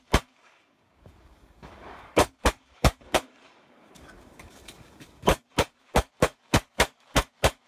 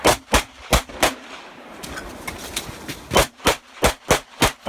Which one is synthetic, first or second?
first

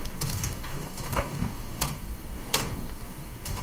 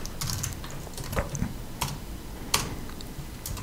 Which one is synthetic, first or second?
first